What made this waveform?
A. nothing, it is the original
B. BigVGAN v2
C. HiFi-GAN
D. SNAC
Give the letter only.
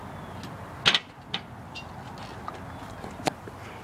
A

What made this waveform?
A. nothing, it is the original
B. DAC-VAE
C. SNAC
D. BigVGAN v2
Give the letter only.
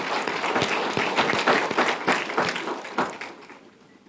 A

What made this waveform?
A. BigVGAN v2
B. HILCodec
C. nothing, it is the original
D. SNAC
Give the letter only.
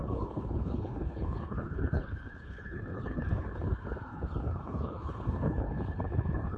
B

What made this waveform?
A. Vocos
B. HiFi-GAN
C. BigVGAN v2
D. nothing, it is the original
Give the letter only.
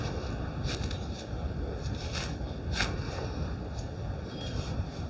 D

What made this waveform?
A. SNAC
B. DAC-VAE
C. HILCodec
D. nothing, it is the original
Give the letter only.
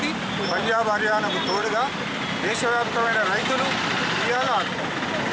D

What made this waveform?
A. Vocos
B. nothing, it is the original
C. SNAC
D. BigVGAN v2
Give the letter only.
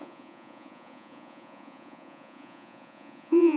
A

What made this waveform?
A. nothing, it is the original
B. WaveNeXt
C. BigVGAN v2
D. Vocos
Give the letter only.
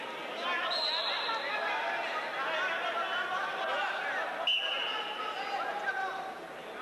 A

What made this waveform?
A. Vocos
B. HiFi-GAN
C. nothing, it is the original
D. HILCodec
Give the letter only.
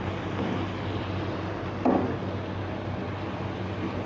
C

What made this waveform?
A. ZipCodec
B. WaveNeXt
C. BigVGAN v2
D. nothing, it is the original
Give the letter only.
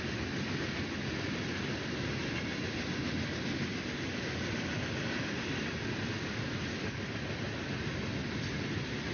D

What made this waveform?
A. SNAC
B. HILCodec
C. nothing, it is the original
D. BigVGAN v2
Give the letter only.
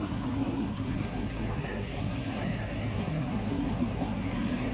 A